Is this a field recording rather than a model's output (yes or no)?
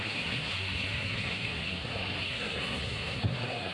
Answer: no